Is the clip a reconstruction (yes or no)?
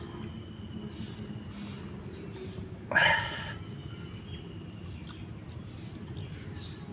no